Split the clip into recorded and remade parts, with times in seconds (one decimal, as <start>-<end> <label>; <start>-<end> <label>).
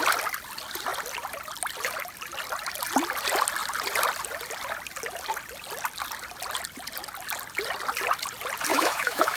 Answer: 0.0-8.7 recorded; 8.7-9.4 remade